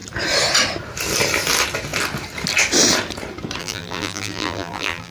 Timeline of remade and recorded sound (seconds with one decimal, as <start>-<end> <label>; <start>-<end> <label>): 0.0-3.6 recorded; 3.6-5.1 remade